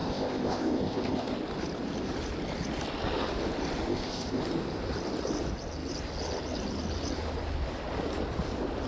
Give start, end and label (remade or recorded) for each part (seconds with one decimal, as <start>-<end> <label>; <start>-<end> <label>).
0.0-1.3 remade; 1.3-3.9 recorded; 3.9-4.4 remade; 4.4-8.9 recorded